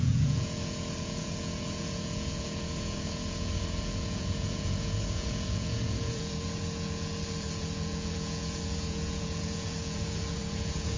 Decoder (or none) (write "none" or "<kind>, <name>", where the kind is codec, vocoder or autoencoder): vocoder, Vocos